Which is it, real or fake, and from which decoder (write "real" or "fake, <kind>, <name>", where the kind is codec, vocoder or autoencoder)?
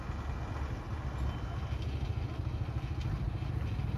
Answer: real